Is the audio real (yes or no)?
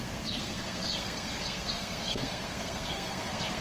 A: no